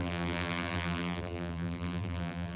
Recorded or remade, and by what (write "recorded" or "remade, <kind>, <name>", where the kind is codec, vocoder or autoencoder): remade, vocoder, BigVGAN v2